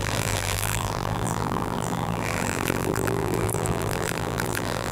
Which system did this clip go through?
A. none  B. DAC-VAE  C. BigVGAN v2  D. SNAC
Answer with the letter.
C